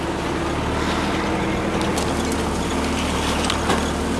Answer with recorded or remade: recorded